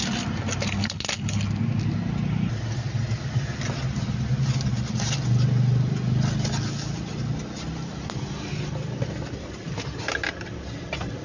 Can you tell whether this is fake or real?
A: real